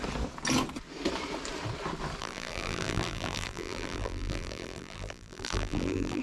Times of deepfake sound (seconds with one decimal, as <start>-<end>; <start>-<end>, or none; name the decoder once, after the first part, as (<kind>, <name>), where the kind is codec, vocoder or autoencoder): 2.2-6.2 (vocoder, BigVGAN v2)